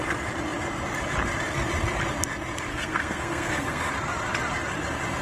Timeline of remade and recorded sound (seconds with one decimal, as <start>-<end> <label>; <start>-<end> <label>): 0.0-2.7 recorded; 2.7-3.9 remade; 3.9-5.2 recorded